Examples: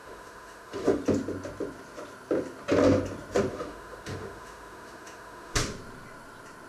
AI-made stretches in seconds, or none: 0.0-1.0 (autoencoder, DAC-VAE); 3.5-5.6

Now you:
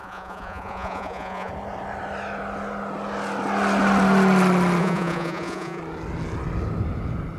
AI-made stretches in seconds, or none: 0.0-1.5 (vocoder, Vocos); 4.8-5.8

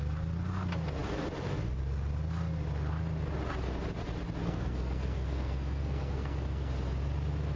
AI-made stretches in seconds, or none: 4.4-6.7 (codec, SNAC)

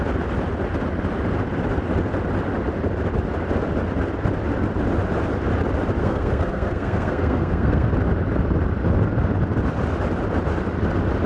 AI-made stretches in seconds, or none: 6.0-7.9 (codec, SNAC)

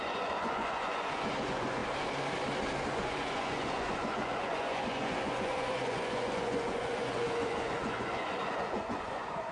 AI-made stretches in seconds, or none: 0.0-1.8 (vocoder, Vocos); 2.9-9.5